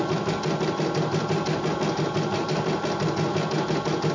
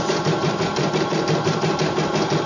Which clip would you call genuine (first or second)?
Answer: first